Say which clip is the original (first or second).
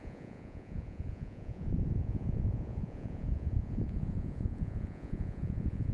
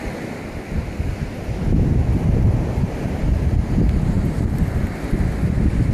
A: second